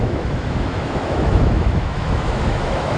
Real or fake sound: fake